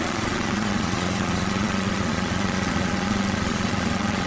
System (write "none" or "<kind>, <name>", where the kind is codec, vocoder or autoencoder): vocoder, Vocos